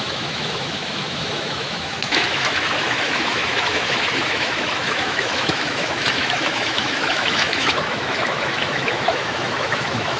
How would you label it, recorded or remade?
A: remade